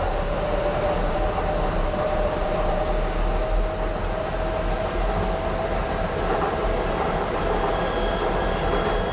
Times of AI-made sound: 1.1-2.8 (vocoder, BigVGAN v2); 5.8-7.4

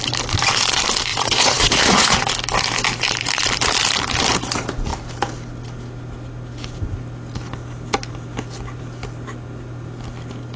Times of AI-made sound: 1.1-2.3 (vocoder, Vocos)

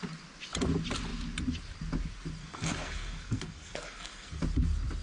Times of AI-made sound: 2.4-4.4 (codec, SNAC)